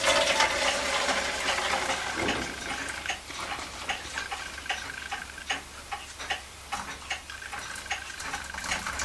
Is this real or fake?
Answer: real